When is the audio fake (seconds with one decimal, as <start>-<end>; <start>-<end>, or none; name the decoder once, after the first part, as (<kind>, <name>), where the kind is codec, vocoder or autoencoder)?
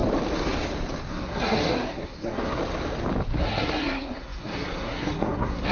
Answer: 1.1-2.6 (codec, SNAC); 3.4-5.7